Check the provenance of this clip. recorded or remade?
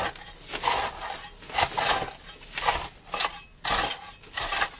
recorded